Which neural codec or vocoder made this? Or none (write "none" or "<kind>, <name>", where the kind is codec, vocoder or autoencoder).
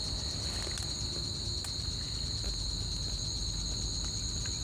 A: none